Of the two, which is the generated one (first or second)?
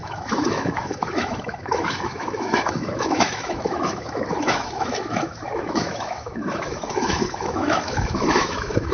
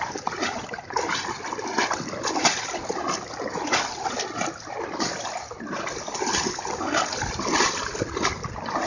first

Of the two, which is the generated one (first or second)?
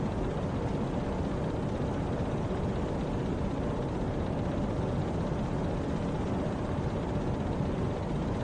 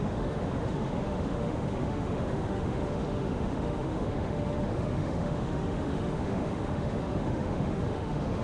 second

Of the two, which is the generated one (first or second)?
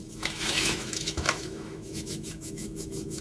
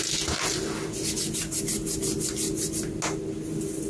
first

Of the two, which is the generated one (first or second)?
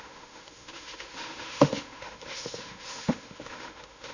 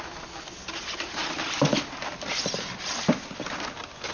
first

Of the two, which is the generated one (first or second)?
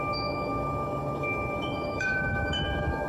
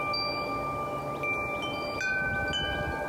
first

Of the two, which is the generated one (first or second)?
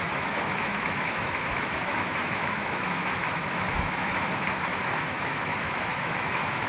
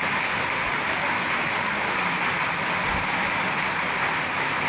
first